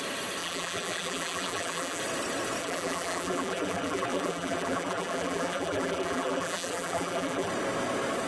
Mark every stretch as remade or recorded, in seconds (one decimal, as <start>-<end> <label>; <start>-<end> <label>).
0.0-0.4 recorded; 0.4-2.0 remade; 2.0-2.6 recorded; 2.6-7.5 remade; 7.5-8.3 recorded